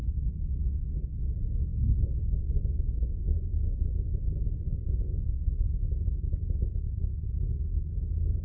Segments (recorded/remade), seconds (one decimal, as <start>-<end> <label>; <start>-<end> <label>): 0.0-4.6 recorded; 4.6-5.7 remade; 5.7-8.4 recorded